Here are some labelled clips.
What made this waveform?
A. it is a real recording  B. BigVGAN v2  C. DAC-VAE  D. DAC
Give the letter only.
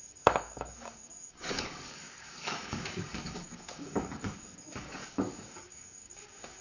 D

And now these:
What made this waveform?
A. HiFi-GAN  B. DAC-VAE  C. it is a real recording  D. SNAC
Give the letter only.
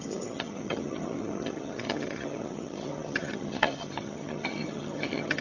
A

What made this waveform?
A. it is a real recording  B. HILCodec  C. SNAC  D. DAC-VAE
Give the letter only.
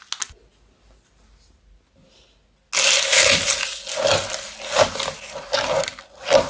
A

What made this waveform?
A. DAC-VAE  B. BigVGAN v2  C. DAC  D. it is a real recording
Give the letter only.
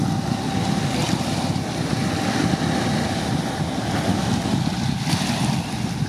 D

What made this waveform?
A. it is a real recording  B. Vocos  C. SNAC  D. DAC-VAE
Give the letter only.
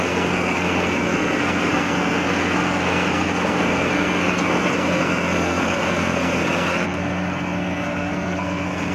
C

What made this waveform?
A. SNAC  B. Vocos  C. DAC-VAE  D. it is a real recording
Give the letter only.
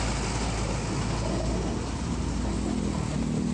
D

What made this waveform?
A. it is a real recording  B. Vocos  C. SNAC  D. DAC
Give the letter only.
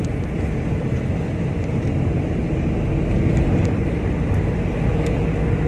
A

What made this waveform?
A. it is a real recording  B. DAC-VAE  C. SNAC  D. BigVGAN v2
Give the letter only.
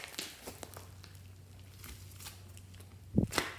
A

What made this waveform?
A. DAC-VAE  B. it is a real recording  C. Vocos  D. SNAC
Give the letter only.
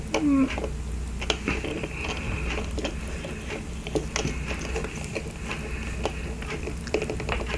B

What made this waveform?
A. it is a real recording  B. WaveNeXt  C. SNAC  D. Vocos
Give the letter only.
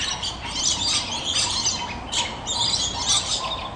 A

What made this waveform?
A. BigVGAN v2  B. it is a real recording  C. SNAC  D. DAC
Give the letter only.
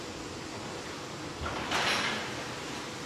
B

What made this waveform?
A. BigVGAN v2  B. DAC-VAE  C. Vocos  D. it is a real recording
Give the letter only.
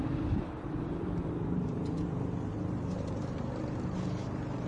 A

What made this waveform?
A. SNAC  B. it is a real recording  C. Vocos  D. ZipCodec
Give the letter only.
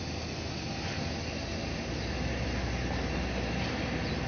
B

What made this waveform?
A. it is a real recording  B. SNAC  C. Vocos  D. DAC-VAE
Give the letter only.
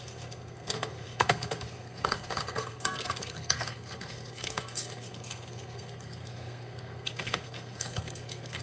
B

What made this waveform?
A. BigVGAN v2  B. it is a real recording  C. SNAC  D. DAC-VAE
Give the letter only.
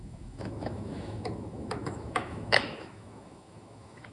D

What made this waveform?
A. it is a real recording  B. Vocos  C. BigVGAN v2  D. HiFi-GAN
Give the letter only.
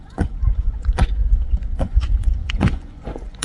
B